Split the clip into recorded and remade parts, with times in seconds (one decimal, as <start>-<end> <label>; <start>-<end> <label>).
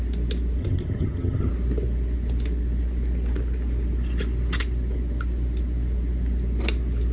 0.0-0.6 recorded; 0.6-1.5 remade; 1.5-7.1 recorded